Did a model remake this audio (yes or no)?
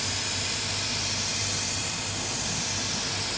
no